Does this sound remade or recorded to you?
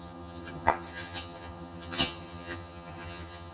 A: remade